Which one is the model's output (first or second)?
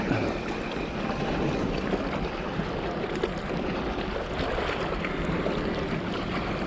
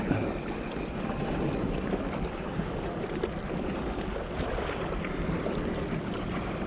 second